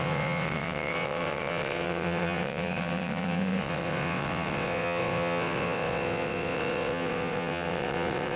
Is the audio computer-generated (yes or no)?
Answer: yes